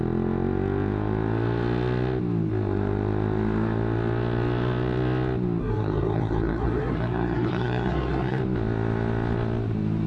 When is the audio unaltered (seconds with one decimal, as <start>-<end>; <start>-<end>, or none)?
0.0-5.6; 8.4-10.1